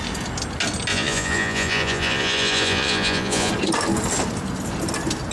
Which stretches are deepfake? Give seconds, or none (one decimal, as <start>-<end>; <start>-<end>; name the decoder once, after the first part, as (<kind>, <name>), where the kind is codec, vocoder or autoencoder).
0.9-3.5 (vocoder, Vocos)